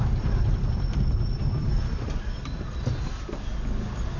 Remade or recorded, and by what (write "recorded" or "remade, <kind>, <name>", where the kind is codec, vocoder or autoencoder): recorded